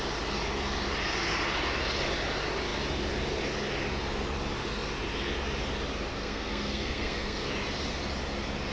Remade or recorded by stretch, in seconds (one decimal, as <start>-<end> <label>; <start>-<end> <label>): 0.0-6.1 recorded; 6.1-7.5 remade; 7.5-8.7 recorded